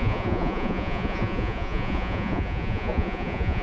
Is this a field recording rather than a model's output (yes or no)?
no